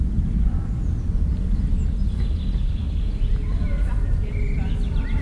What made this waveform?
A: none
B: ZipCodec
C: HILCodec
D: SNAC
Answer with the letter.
A